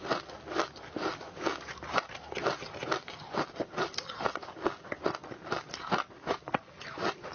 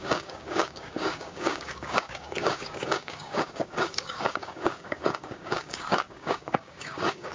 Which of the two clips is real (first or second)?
first